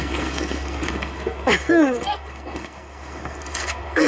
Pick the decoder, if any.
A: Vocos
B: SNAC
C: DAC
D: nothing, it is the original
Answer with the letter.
B